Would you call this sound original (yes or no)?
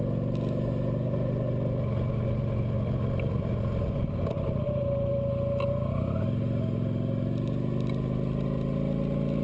yes